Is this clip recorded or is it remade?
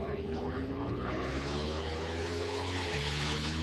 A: remade